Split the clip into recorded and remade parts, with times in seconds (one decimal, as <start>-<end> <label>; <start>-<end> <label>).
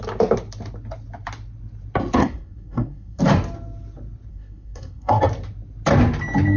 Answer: 0.0-2.2 recorded; 2.2-3.2 remade; 3.2-4.3 recorded; 4.3-5.2 remade; 5.2-6.6 recorded